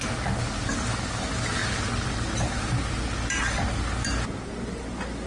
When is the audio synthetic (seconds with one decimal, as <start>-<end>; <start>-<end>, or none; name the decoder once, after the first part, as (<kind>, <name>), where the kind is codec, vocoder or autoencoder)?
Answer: none